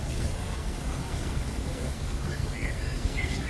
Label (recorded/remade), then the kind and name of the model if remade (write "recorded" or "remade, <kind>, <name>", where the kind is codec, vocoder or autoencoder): remade, codec, SNAC